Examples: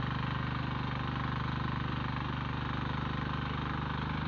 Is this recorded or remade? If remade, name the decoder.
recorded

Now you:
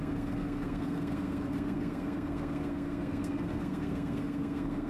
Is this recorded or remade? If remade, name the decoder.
remade, codec, SNAC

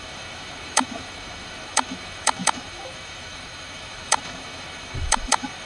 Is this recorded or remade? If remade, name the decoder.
remade, autoencoder, DAC-VAE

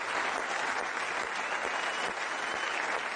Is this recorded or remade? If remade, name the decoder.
recorded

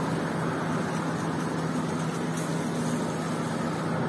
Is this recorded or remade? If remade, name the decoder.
recorded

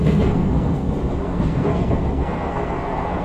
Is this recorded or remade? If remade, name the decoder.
remade, codec, SNAC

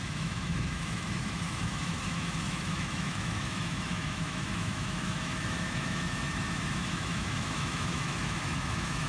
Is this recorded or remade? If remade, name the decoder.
remade, autoencoder, DAC-VAE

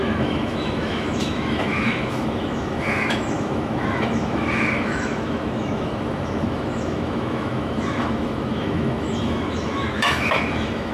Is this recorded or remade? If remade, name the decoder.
remade, autoencoder, DAC-VAE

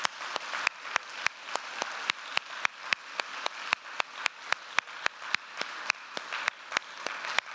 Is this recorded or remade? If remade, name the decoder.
recorded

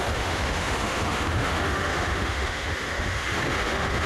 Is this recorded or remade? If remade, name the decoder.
remade, autoencoder, DAC-VAE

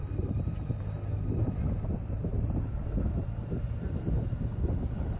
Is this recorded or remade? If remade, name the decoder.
recorded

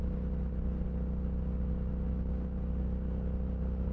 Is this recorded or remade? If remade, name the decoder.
recorded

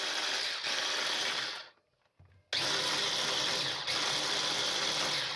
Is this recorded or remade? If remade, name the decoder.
recorded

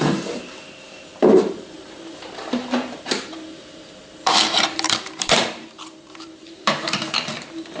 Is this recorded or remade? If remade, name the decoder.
remade, vocoder, BigVGAN v2